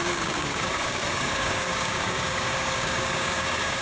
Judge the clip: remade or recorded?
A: remade